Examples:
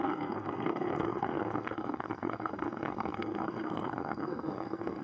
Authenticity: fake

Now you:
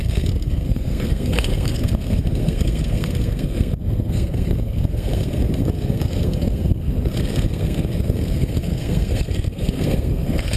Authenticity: fake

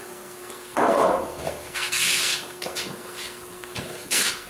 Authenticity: fake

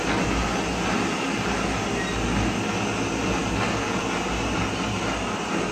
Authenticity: real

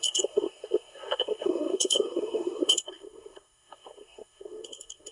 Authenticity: fake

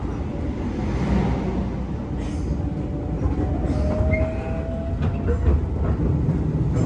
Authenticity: real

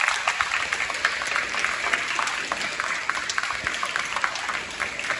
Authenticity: real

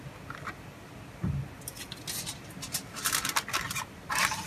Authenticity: real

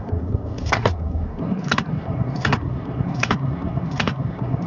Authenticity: fake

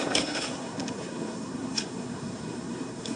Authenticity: fake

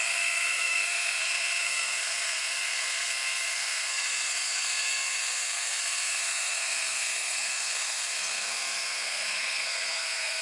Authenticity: fake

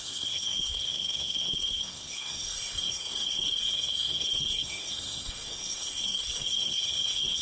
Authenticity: fake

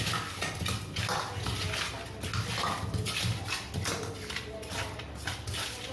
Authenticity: real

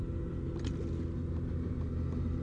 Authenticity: real